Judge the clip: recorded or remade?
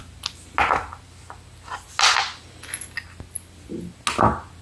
recorded